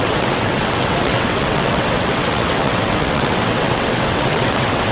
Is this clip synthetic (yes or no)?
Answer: yes